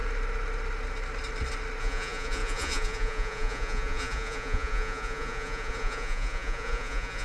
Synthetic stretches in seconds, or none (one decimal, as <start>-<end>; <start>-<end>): 1.8-7.2